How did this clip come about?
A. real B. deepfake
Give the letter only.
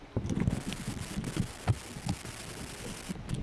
A